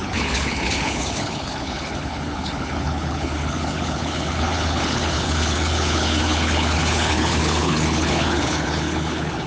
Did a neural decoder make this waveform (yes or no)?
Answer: yes